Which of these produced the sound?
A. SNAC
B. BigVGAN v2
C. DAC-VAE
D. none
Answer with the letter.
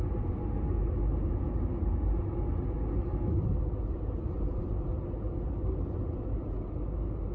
D